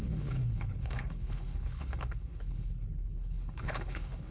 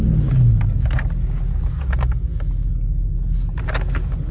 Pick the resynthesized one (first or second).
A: first